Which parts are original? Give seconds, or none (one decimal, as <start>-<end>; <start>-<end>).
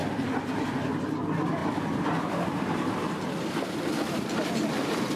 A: none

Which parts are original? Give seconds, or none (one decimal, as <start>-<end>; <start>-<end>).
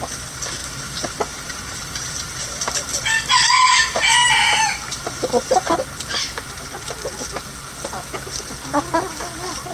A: 0.0-0.6; 2.7-9.7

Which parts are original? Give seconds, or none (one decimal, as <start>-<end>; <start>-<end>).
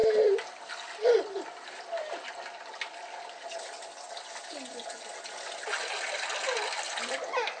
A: 0.0-7.6